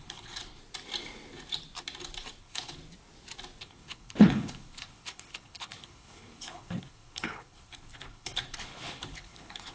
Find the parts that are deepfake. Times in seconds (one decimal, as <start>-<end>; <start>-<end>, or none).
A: 0.0-0.6; 2.4-2.8; 3.6-9.7